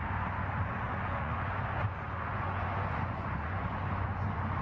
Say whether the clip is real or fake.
fake